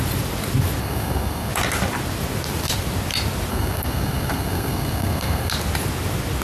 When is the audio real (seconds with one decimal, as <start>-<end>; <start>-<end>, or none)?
0.0-0.8; 1.5-3.5; 5.5-6.4